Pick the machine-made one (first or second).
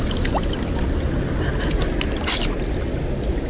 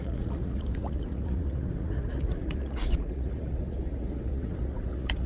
second